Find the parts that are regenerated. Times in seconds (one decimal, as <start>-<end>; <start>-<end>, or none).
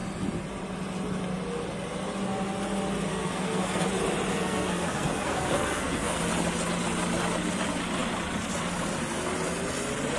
3.1-3.9; 4.3-6.2